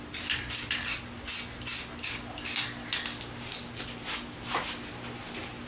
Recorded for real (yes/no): yes